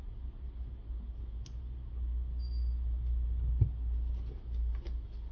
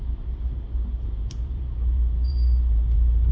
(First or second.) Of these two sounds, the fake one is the second